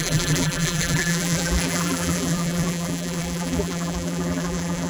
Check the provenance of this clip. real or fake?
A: fake